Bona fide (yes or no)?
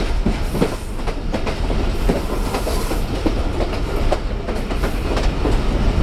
yes